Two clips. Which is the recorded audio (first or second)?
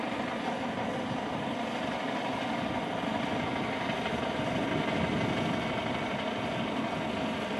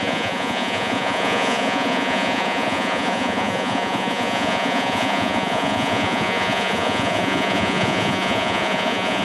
first